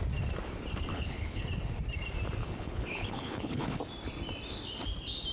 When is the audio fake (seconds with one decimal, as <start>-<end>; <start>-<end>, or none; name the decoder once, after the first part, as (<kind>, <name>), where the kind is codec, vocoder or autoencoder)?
0.9-1.4 (codec, HILCodec); 2.4-3.8